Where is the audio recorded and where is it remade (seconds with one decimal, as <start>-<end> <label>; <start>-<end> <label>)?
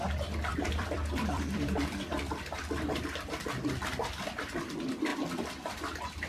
0.0-0.5 recorded; 0.5-4.3 remade; 4.3-6.3 recorded